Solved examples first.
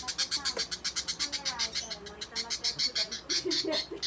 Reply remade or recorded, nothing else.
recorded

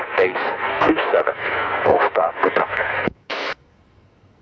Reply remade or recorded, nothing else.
remade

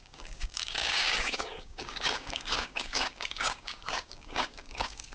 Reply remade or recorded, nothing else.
remade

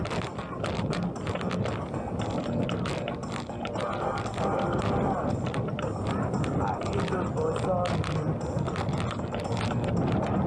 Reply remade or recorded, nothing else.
recorded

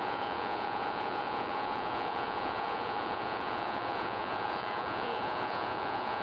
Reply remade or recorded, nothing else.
remade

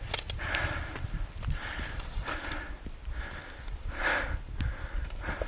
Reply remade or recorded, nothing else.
recorded